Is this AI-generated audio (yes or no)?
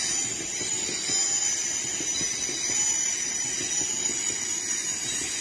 no